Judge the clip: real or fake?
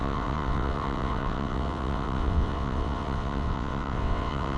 fake